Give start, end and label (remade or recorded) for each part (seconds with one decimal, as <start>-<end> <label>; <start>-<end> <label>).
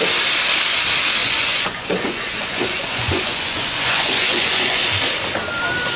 0.0-1.2 recorded; 1.2-4.8 remade; 4.8-6.0 recorded